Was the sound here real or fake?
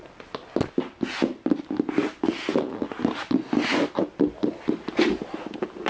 real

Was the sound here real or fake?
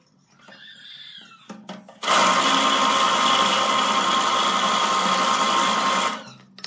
real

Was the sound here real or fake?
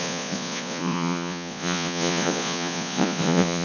fake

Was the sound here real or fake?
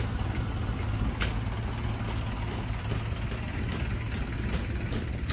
real